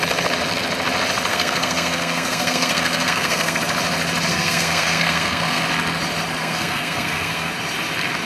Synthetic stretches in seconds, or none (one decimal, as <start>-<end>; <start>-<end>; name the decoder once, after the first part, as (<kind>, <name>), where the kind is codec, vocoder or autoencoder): 1.3-3.6 (codec, SNAC); 4.3-5.6; 6.4-7.5